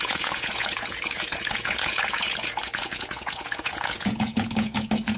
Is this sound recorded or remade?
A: remade